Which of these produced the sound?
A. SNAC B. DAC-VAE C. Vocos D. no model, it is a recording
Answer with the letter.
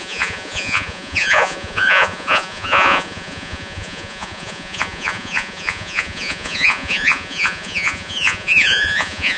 C